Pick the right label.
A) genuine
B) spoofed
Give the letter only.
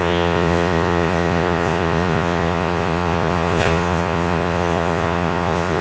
B